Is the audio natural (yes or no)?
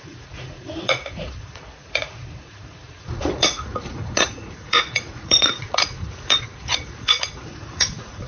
no